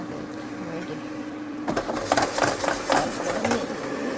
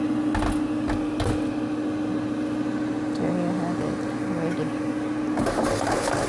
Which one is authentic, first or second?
second